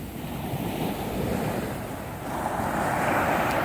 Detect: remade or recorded recorded